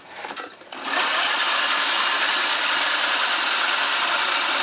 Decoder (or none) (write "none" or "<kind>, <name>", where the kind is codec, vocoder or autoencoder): none